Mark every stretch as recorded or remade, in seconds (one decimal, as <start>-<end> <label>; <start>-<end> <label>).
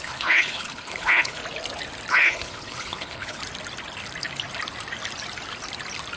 0.0-1.4 remade; 1.4-2.1 recorded; 2.1-3.4 remade; 3.4-6.2 recorded